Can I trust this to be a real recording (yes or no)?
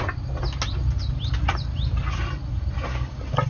yes